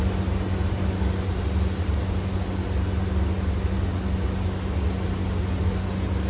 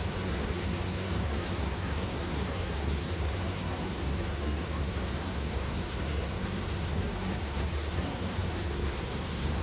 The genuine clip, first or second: first